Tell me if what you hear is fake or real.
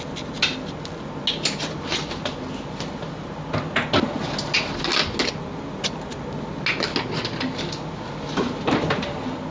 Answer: real